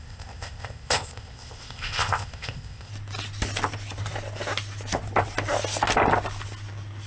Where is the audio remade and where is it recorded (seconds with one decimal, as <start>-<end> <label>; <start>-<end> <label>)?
0.0-2.9 remade; 2.9-7.1 recorded